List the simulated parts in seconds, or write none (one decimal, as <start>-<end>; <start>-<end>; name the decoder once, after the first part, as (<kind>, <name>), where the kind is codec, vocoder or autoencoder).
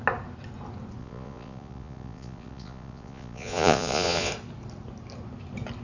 1.0-4.3 (vocoder, Vocos)